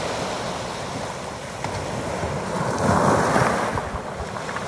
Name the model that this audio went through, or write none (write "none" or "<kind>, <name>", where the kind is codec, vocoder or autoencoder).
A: none